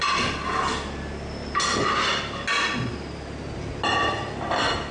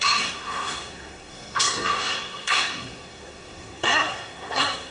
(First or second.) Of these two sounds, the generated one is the second